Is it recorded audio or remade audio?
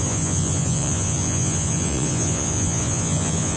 remade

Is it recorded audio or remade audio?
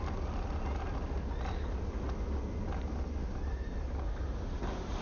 recorded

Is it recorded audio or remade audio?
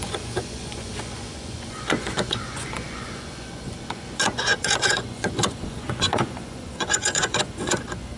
remade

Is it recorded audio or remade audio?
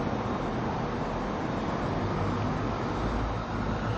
recorded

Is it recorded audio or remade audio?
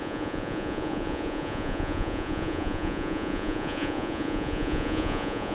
remade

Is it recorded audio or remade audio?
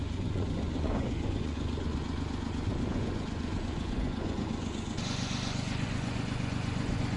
remade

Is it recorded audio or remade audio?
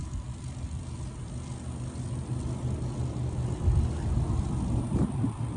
recorded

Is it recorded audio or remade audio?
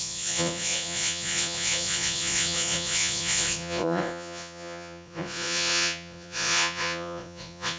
remade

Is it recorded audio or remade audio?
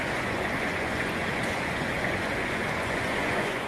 remade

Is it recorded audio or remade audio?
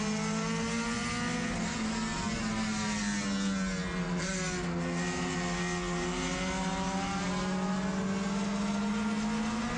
recorded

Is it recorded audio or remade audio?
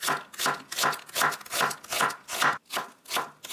recorded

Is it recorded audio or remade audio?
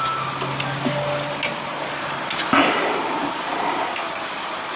recorded